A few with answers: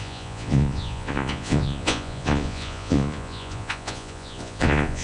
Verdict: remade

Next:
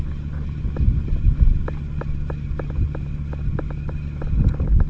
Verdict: recorded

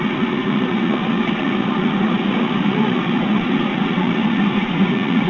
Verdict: remade